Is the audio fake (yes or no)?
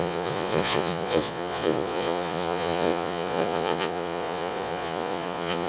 yes